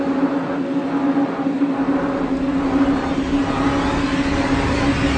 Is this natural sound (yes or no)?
yes